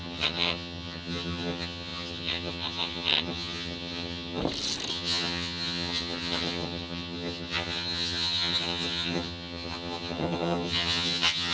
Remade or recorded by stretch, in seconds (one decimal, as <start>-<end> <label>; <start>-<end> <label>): 0.0-4.4 remade; 4.4-4.9 recorded; 4.9-11.5 remade

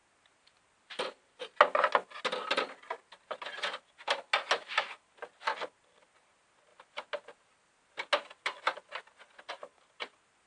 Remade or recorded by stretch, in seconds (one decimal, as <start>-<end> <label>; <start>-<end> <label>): 0.0-10.5 recorded

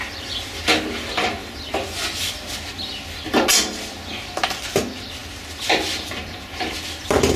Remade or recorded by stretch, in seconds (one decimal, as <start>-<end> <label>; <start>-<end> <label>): 0.0-1.4 recorded; 1.4-2.3 remade; 2.3-7.4 recorded